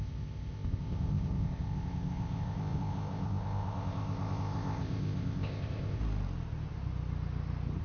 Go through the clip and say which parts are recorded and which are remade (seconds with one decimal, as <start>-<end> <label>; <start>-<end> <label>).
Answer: 0.0-6.0 remade; 6.0-7.8 recorded